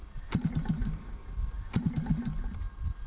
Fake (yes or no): no